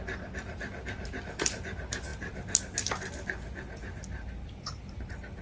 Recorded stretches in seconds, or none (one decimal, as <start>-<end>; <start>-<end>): 0.0-5.4